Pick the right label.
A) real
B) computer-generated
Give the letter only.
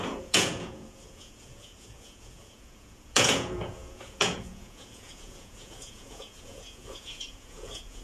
B